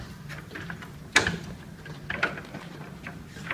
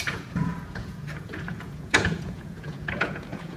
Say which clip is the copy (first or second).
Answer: second